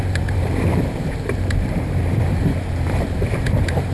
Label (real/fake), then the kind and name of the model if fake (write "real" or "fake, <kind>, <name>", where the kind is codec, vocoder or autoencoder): fake, vocoder, BigVGAN v2